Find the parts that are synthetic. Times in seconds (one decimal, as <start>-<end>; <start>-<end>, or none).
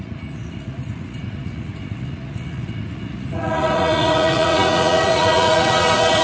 0.0-6.2